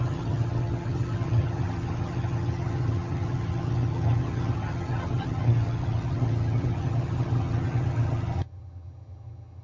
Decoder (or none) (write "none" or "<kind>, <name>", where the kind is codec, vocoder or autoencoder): vocoder, HiFi-GAN